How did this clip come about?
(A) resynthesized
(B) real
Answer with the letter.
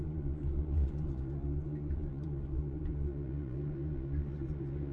A